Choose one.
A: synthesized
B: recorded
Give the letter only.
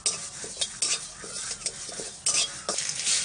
B